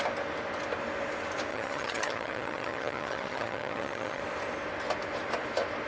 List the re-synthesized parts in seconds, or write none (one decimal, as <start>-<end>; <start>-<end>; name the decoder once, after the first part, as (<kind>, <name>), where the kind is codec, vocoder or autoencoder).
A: 1.5-4.2 (vocoder, HiFi-GAN)